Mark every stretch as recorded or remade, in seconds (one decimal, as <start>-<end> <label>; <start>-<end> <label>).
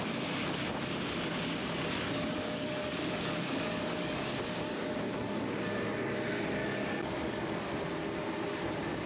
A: 0.0-1.6 recorded; 1.6-4.3 remade; 4.3-6.6 recorded; 6.6-7.7 remade; 7.7-9.1 recorded